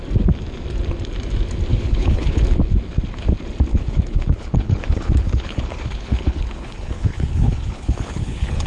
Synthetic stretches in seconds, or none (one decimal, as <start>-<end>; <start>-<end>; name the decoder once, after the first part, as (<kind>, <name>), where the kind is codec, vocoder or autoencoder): 1.7-2.4 (codec, HILCodec); 3.7-8.7